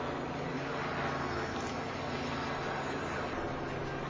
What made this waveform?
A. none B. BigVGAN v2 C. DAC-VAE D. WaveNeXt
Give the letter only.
A